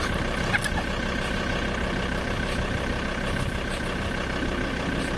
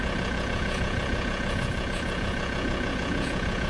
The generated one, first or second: second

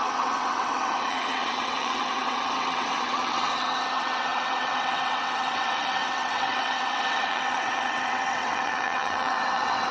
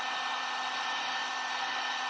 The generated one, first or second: first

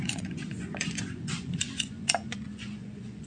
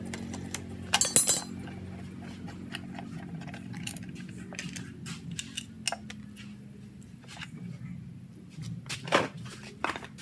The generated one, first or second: first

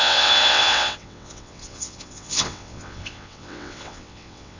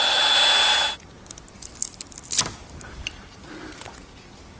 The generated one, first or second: first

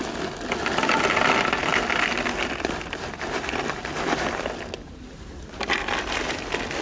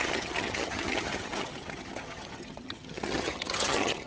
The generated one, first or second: second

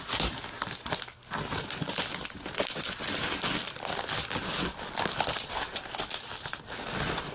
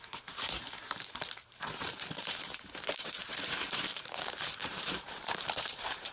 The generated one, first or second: second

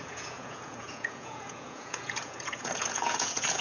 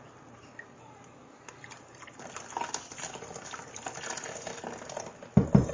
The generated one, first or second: first